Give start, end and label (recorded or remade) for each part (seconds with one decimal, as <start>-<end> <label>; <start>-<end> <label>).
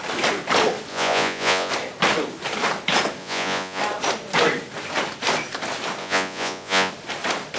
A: 0.0-0.9 recorded; 0.9-1.7 remade; 1.7-3.2 recorded; 3.2-3.8 remade; 3.8-6.0 recorded; 6.0-6.9 remade; 6.9-7.6 recorded